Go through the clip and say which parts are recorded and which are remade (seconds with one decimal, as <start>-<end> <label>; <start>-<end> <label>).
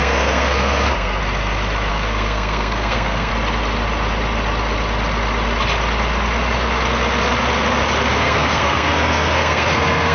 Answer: 0.0-1.2 remade; 1.2-1.9 recorded; 1.9-3.3 remade; 3.3-8.1 recorded; 8.1-10.1 remade